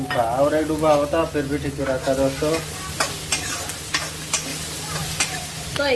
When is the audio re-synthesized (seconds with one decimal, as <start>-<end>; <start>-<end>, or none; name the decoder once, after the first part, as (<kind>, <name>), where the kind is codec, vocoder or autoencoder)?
none